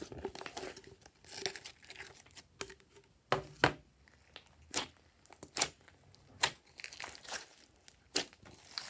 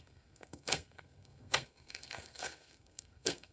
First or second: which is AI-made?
second